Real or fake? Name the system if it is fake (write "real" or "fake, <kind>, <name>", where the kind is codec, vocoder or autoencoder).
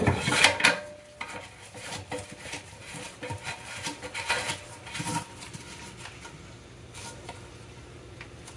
real